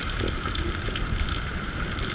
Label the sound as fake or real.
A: real